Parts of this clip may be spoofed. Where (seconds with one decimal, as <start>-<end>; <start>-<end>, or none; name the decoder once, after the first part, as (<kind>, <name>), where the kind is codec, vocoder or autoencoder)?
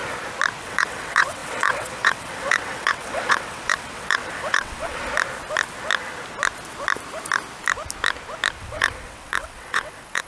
0.6-5.0 (vocoder, WaveNeXt); 8.6-10.3